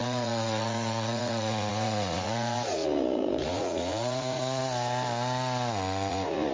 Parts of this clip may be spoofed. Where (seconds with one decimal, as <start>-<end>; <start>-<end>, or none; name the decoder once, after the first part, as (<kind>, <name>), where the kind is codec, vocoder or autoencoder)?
0.0-4.6 (vocoder, Vocos); 6.1-6.5